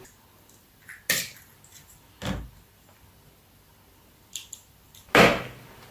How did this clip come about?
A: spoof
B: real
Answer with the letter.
B